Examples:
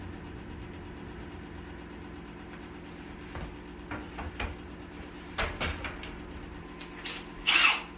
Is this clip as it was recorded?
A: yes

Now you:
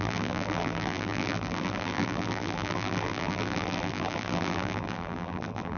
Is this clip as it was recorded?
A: no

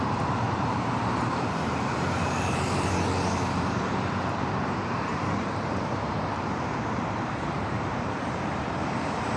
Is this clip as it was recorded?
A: no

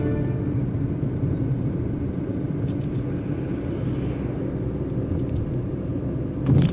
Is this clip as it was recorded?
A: yes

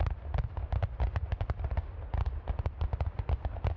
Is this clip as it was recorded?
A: yes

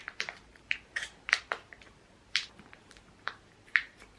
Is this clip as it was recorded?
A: no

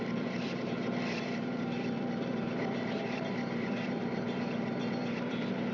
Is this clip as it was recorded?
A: no